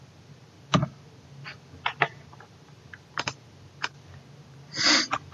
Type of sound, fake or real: fake